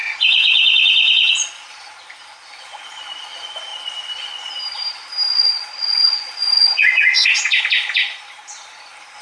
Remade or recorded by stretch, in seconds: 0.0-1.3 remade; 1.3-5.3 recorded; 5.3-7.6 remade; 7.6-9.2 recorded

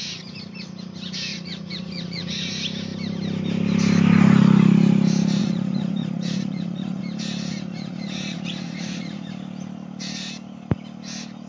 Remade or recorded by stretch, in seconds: 0.0-1.3 recorded; 1.3-2.5 remade; 2.5-5.4 recorded; 5.4-7.0 remade; 7.0-7.5 recorded; 7.5-9.3 remade; 9.3-11.5 recorded

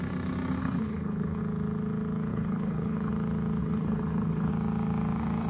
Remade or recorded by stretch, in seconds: 0.0-0.6 recorded; 0.6-1.4 remade; 1.4-2.3 recorded; 2.3-3.1 remade; 3.1-3.6 recorded; 3.6-4.5 remade; 4.5-5.5 recorded

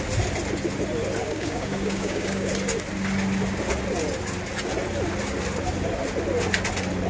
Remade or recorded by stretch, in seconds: 0.0-1.2 recorded; 1.2-2.5 remade; 2.5-7.1 recorded